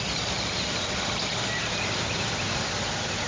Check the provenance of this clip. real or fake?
real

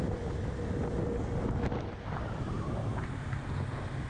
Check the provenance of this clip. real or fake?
real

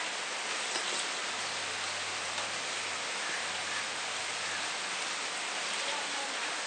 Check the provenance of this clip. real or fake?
real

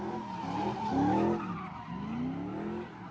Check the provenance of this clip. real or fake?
real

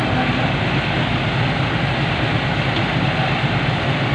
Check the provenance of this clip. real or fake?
real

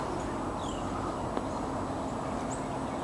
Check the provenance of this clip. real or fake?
real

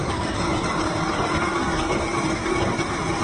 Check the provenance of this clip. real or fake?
real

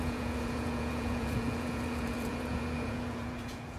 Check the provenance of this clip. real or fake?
fake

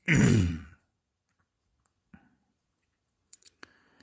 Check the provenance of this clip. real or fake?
fake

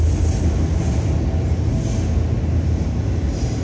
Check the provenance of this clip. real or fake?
real